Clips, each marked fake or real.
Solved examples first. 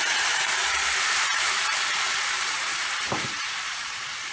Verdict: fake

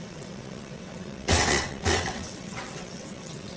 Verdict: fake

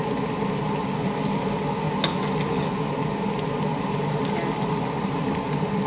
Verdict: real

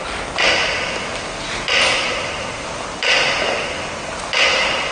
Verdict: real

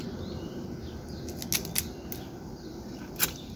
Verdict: real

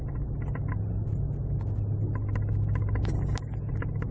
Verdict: real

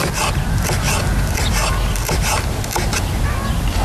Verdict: real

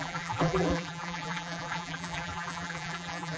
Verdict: fake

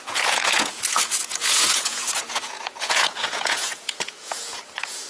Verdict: fake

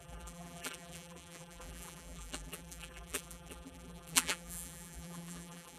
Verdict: fake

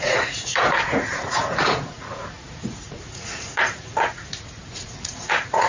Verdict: fake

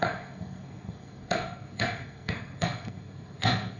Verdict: fake